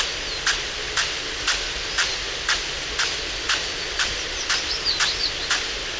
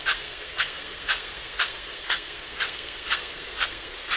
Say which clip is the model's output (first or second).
second